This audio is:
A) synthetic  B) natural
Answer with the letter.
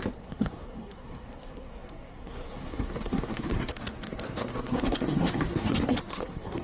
A